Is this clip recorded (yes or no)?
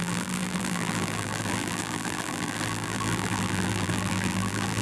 no